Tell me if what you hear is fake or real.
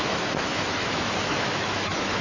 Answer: fake